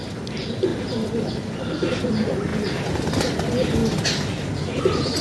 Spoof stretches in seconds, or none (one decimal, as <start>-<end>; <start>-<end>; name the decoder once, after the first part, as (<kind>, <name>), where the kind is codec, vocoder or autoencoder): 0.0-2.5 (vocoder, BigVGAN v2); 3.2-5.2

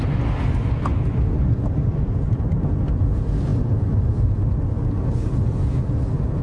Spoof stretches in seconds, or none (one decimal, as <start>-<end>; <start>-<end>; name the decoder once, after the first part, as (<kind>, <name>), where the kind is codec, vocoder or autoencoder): none

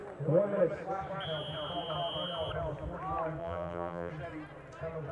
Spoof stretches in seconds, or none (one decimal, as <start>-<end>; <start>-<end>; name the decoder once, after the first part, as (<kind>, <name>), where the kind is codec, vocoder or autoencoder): 3.4-4.1 (vocoder, BigVGAN v2)